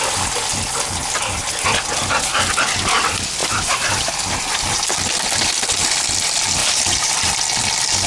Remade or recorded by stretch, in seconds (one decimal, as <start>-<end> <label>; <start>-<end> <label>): 0.0-1.0 recorded; 1.0-1.5 remade; 1.5-3.4 recorded; 3.4-4.8 remade; 4.8-6.6 recorded; 6.6-7.3 remade; 7.3-8.1 recorded